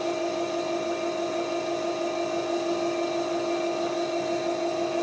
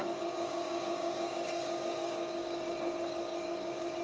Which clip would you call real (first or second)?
first